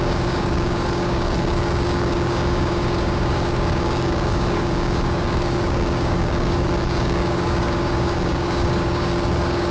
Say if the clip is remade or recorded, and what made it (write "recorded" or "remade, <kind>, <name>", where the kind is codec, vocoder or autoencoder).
remade, codec, DAC